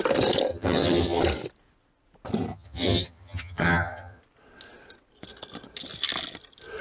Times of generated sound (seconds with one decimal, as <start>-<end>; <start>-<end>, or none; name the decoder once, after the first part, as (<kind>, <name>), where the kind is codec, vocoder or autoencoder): 0.5-1.2 (vocoder, HiFi-GAN); 2.5-4.2